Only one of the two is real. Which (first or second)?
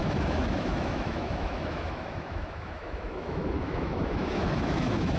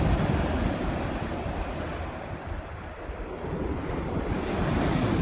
second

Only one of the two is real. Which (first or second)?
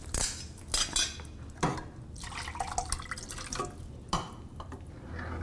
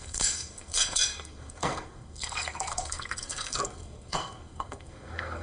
first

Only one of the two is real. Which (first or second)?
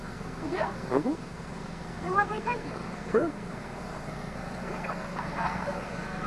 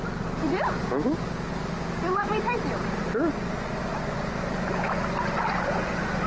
second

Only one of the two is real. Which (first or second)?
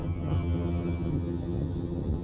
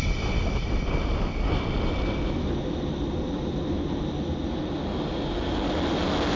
second